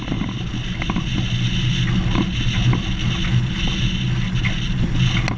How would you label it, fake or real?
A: real